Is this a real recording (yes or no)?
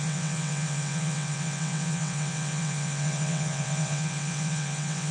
no